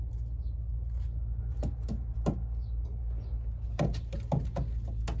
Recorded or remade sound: recorded